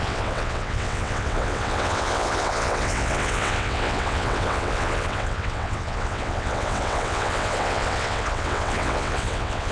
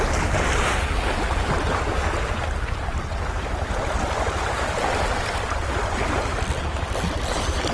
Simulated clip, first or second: first